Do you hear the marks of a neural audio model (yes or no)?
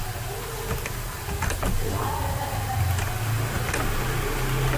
no